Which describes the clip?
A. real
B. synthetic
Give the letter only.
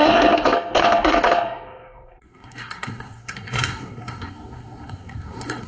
B